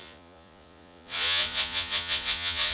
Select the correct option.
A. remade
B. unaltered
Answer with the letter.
A